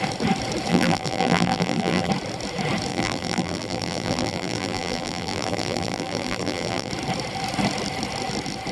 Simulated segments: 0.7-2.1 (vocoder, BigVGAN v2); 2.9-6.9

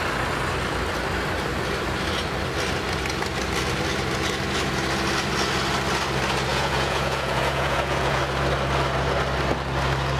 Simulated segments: 6.5-8.2 (vocoder, Vocos)

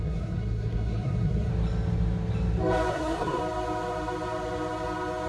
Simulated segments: 0.0-1.5 (codec, SNAC); 2.9-3.4

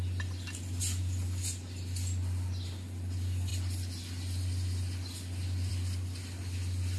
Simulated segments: none

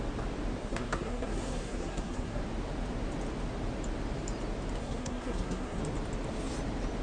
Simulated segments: 0.6-2.4 (codec, SNAC); 4.8-5.8